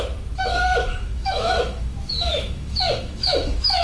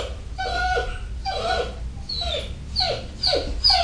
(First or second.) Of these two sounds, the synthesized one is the first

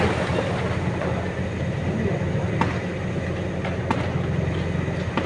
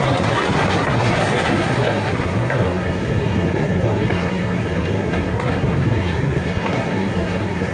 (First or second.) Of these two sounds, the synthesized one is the second